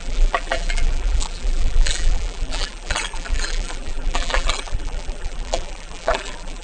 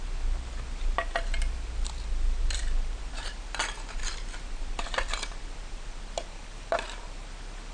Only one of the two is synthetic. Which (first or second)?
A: first